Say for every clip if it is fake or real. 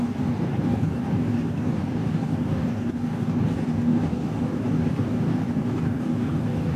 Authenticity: fake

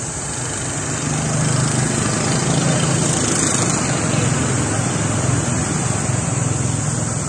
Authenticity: real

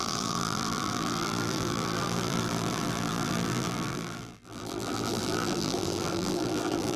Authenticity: fake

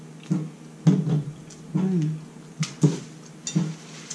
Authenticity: real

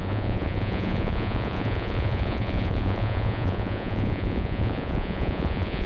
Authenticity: fake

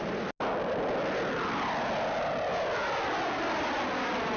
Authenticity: real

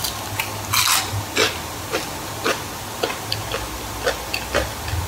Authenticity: real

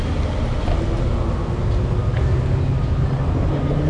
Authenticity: real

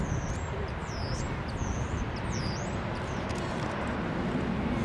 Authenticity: real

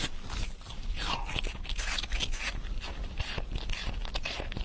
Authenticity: real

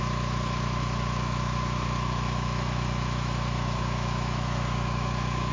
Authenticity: fake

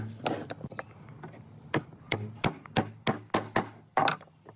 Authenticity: real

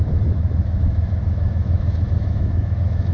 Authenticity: fake